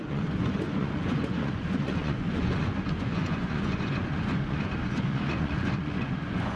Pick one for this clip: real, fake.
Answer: fake